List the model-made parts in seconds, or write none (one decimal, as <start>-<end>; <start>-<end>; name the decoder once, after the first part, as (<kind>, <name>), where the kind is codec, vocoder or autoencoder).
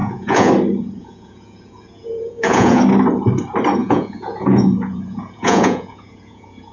0.0-0.5 (vocoder, Vocos); 1.0-2.8; 3.8-6.7